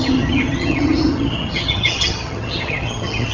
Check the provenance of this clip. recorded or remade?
remade